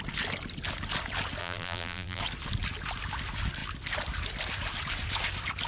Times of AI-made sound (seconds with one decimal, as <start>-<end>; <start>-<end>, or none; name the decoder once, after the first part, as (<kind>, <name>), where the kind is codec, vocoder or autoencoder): 1.4-2.2 (vocoder, BigVGAN v2)